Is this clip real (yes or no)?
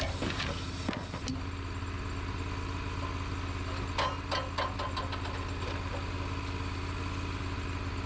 yes